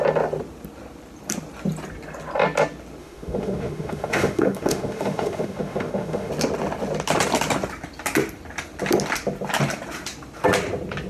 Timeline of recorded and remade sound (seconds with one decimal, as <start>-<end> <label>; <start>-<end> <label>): 0.0-3.0 recorded; 3.0-6.3 remade; 6.3-11.1 recorded